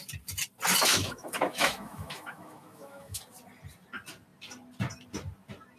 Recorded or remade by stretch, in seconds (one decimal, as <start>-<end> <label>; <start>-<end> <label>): 0.0-0.9 recorded; 0.9-3.2 remade; 3.2-5.8 recorded

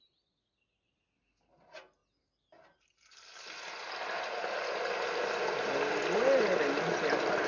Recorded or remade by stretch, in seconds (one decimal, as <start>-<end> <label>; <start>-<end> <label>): 0.0-7.5 recorded

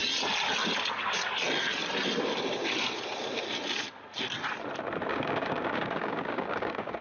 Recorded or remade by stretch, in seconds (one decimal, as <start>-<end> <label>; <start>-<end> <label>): 0.0-5.1 recorded; 5.1-7.0 remade

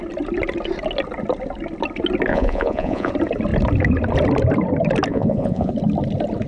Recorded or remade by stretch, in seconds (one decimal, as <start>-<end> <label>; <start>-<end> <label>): 0.0-2.3 recorded; 2.3-3.1 remade; 3.1-5.1 recorded; 5.1-5.7 remade; 5.7-6.5 recorded

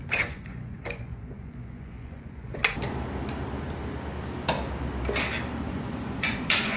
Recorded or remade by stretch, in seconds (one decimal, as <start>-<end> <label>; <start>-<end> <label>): 0.0-2.6 remade; 2.6-5.7 recorded; 5.7-6.8 remade